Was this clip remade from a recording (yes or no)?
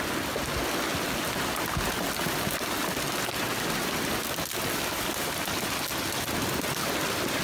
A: no